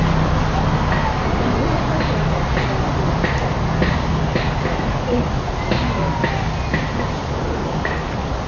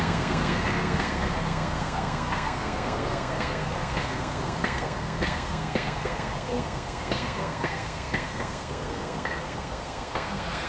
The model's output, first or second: second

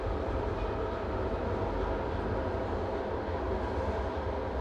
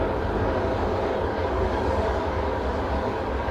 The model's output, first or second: second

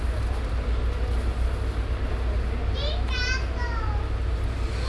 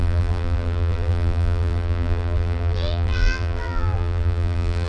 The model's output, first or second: second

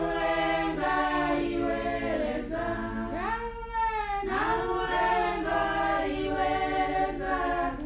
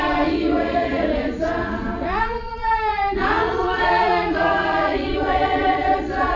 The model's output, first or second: second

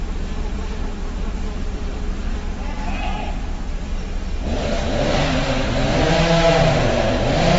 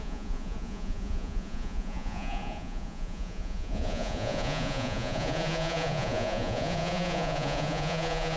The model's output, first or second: second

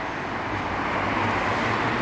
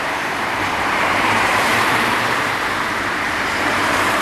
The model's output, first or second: second